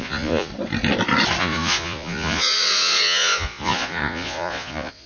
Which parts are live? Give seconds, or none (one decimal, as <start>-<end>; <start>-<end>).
0.5-1.4